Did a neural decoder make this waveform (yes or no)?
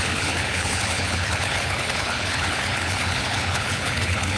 yes